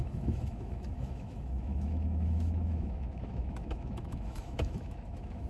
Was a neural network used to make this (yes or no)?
yes